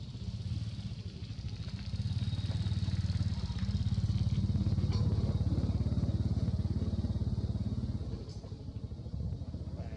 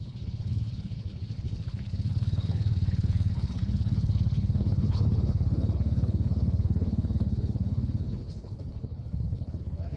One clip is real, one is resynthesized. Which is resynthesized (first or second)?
second